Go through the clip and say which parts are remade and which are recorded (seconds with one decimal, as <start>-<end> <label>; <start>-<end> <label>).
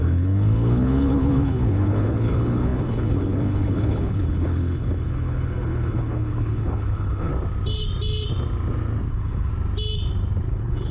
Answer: 0.0-7.3 remade; 7.3-9.1 recorded; 9.1-9.5 remade; 9.5-10.5 recorded; 10.5-10.9 remade